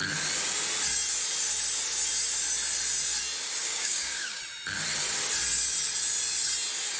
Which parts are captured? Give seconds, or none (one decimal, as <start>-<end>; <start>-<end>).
0.0-3.6; 4.4-7.0